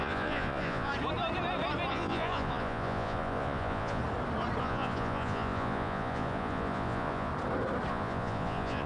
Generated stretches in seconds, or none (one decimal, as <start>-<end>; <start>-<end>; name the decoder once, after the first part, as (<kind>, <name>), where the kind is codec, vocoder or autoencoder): 0.0-0.9 (vocoder, Vocos); 1.9-4.0; 4.6-7.3; 7.9-8.9